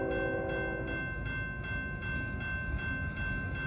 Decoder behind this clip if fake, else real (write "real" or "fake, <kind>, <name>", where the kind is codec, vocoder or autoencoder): real